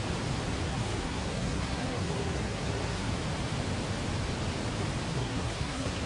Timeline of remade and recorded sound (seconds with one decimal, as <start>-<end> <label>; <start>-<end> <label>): 0.0-0.7 recorded; 0.7-3.1 remade; 3.1-5.1 recorded; 5.1-6.1 remade